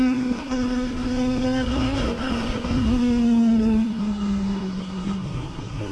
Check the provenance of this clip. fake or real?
fake